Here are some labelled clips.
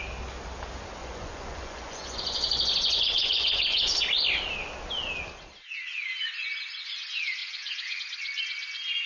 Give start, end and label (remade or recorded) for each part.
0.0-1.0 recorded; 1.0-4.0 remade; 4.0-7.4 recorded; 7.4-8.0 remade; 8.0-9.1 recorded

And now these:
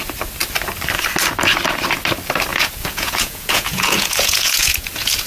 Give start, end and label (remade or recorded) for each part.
0.0-2.5 recorded; 2.5-5.3 remade